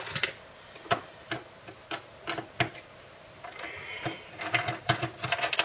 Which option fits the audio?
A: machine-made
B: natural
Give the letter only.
B